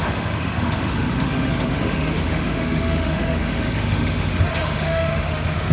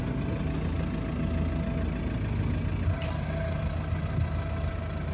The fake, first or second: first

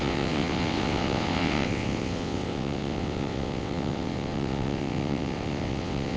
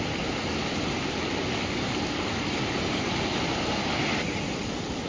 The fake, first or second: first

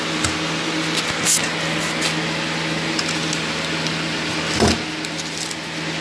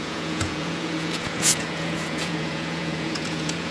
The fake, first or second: second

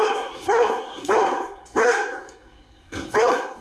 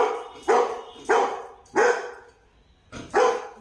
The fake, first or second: first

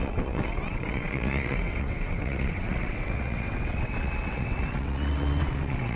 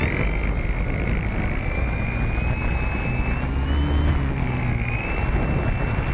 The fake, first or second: first